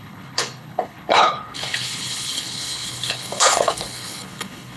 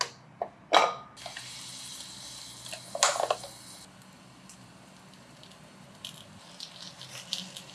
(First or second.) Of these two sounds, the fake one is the first